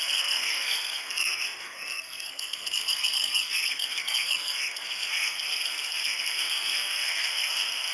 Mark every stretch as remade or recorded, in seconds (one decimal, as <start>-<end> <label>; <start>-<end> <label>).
0.0-7.9 remade